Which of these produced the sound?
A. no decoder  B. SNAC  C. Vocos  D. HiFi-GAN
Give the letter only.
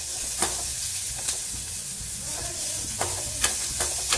C